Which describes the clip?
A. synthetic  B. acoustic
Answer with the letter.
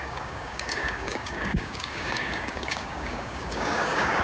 A